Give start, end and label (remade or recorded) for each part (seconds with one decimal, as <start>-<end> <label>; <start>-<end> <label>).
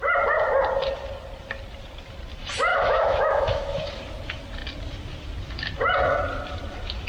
0.0-2.7 recorded; 2.7-3.9 remade; 3.9-7.1 recorded